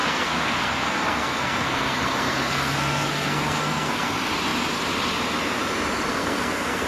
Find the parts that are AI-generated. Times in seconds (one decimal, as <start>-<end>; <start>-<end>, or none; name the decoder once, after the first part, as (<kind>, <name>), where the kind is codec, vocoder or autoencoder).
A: 0.0-4.1 (codec, SNAC); 6.1-6.9